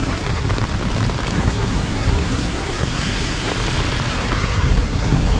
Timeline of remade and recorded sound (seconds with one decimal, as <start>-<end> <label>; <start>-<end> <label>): 0.0-0.5 remade; 0.5-1.3 recorded; 1.3-3.5 remade; 3.5-4.1 recorded; 4.1-5.4 remade